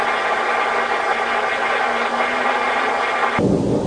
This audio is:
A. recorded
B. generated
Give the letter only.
A